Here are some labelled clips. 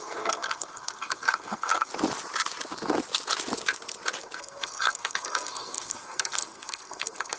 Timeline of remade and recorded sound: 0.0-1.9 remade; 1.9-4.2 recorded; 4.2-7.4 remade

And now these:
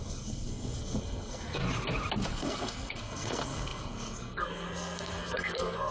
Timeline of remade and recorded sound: 0.0-1.6 remade; 1.6-2.3 recorded; 2.3-5.9 remade